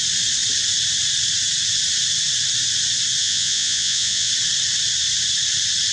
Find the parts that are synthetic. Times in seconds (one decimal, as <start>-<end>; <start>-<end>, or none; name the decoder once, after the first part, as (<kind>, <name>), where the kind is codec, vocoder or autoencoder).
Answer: 3.2-4.3 (vocoder, Vocos)

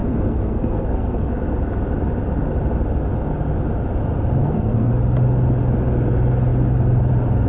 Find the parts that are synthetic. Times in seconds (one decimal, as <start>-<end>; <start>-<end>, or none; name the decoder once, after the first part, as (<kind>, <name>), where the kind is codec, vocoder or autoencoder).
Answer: 0.0-1.3 (codec, SNAC); 4.4-4.9

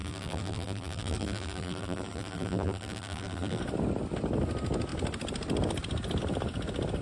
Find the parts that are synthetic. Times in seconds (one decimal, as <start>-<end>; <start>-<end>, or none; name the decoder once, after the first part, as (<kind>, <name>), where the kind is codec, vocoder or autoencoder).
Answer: 0.0-3.6 (vocoder, BigVGAN v2)

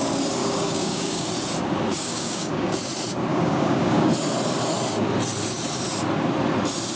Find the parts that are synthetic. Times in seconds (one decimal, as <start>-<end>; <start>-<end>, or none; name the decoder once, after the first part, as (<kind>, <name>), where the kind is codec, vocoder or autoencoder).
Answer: 0.4-1.3 (codec, DAC); 1.9-2.8; 3.3-4.1

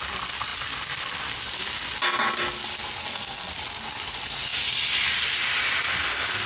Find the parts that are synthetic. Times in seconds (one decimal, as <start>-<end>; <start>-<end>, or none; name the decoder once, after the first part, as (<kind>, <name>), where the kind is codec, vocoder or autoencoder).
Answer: 3.0-3.5 (codec, SNAC)